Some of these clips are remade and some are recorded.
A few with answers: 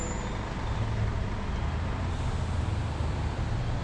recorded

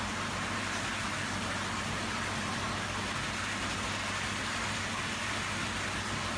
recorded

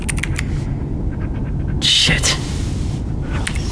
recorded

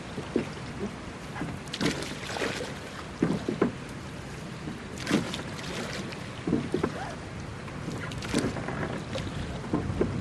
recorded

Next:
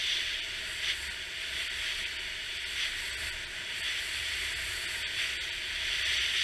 recorded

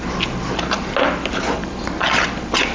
recorded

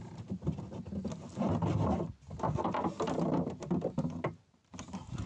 recorded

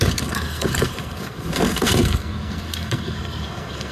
remade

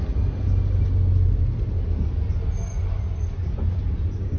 recorded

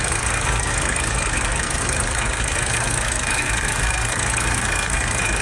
remade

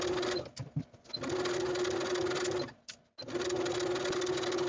recorded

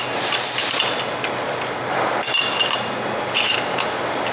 recorded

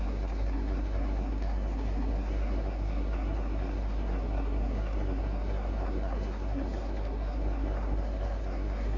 remade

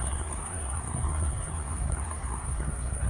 remade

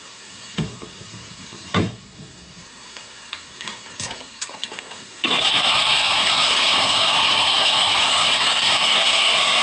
remade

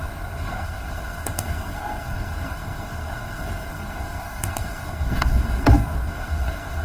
remade